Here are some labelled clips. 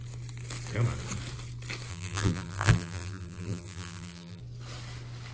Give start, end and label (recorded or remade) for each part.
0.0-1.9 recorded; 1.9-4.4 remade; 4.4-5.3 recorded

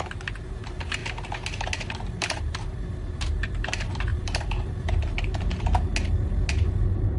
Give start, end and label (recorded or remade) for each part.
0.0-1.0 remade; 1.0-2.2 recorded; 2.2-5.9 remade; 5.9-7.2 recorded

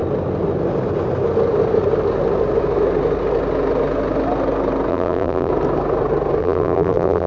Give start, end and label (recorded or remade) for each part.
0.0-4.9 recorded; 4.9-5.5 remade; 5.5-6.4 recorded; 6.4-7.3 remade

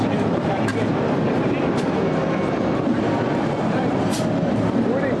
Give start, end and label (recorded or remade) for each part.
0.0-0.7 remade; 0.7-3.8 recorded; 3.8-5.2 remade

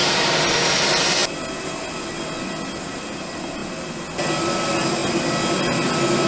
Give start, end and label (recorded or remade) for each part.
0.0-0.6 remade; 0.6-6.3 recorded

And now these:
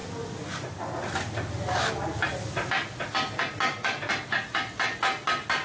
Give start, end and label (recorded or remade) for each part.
0.0-5.6 recorded

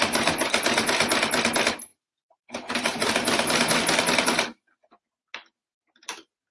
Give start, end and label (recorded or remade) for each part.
0.0-1.9 recorded; 1.9-3.8 remade; 3.8-6.5 recorded

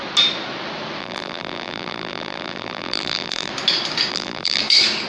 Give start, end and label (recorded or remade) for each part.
0.0-1.0 recorded; 1.0-3.5 remade; 3.5-4.1 recorded; 4.1-4.6 remade; 4.6-5.1 recorded